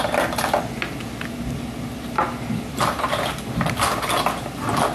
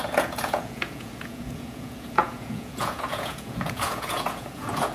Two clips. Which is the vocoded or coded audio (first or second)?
second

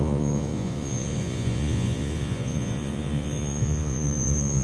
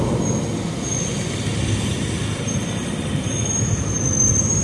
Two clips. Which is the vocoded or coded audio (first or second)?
first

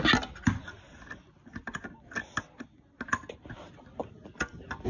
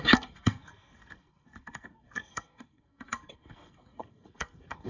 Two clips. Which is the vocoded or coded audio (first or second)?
second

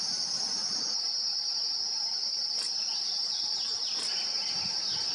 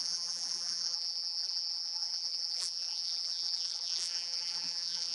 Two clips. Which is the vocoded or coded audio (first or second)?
second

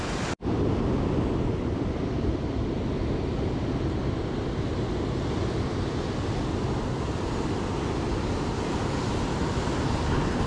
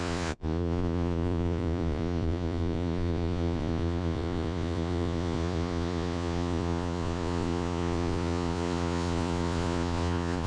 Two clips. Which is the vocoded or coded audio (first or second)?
second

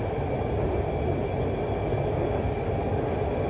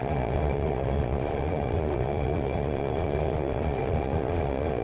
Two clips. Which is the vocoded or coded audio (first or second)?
second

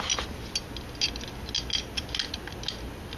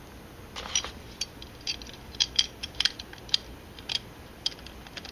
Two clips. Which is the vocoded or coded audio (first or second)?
second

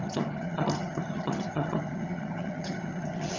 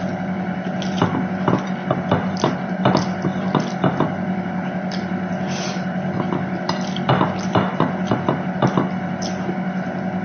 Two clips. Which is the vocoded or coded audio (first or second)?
first